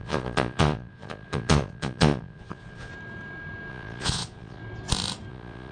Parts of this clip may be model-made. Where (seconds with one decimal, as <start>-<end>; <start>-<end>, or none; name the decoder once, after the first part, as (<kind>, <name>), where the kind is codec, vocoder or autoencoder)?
0.0-2.9 (vocoder, Vocos); 3.7-4.6; 5.3-5.7